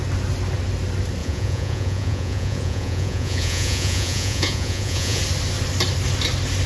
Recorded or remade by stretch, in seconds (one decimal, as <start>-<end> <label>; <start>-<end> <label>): 0.0-1.2 recorded; 1.2-5.2 remade; 5.2-6.7 recorded